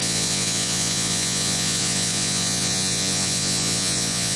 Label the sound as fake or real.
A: fake